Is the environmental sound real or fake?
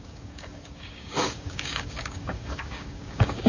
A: fake